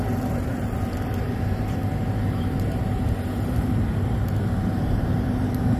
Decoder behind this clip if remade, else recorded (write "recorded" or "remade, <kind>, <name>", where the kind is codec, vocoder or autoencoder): remade, vocoder, BigVGAN v2